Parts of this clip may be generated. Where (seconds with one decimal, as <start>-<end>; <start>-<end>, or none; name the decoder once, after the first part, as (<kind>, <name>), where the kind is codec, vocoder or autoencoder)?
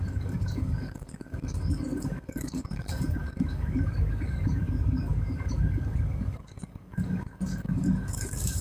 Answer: 0.0-8.6 (codec, DAC)